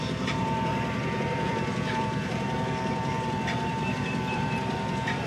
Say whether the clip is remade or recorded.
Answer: remade